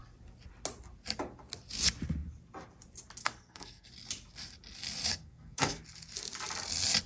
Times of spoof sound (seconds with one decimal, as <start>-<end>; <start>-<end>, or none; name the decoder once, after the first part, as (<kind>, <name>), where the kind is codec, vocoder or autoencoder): 3.2-3.9 (codec, SNAC); 5.1-5.8

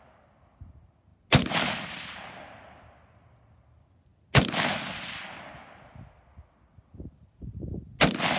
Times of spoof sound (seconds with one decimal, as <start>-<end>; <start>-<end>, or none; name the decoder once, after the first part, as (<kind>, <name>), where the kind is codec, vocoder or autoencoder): none

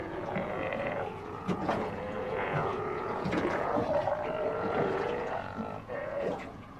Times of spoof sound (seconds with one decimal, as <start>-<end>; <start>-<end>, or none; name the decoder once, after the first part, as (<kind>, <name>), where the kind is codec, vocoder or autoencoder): 0.0-6.8 (vocoder, Vocos)

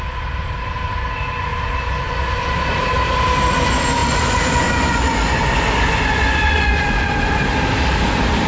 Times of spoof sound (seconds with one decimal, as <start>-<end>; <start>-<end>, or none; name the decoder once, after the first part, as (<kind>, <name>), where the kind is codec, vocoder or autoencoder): 4.0-7.4 (vocoder, Vocos)

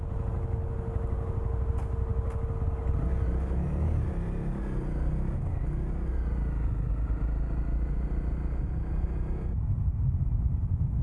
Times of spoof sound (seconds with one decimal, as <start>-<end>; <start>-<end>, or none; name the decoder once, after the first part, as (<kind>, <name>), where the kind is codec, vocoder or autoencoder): none

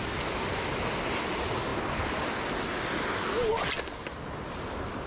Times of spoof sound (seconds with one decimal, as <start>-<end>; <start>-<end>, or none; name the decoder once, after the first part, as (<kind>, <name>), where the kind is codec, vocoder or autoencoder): none

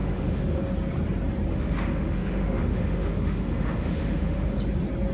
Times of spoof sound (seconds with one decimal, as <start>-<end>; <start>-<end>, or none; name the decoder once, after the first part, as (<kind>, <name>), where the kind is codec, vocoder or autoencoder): 0.0-0.6 (autoencoder, DAC-VAE); 1.5-4.6